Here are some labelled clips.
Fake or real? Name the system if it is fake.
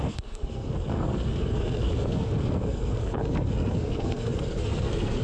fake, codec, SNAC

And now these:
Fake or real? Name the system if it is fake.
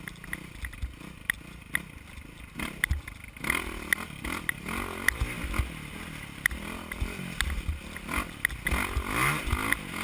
real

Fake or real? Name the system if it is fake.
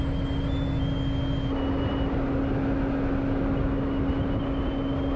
real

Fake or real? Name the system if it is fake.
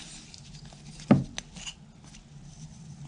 real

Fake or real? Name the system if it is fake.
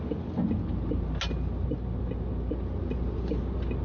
real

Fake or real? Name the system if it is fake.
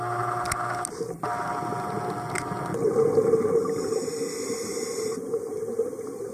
real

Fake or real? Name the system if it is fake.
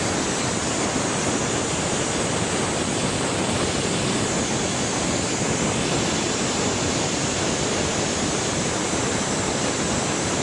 real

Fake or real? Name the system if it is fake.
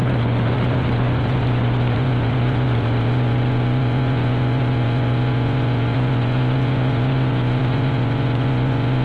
fake, vocoder, Vocos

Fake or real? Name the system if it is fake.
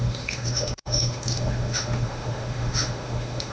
fake, autoencoder, DAC-VAE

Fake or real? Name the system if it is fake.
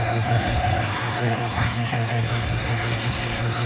fake, codec, SNAC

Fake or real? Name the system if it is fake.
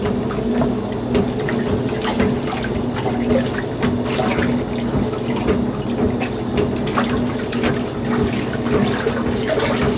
real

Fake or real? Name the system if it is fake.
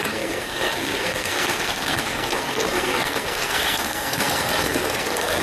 fake, codec, SNAC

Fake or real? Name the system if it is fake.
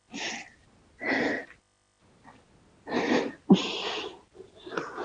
real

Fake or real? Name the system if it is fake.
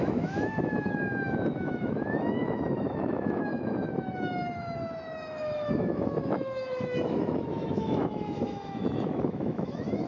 fake, autoencoder, DAC-VAE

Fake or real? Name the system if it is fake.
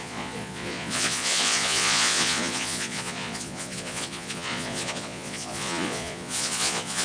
fake, vocoder, Vocos